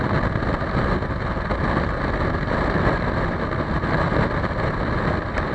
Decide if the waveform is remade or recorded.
recorded